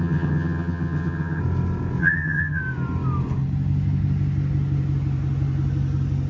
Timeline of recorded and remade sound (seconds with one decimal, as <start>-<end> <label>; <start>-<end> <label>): 0.0-1.4 remade; 1.4-2.0 recorded; 2.0-2.6 remade; 2.6-6.3 recorded